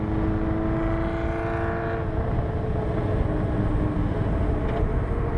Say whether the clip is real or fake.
real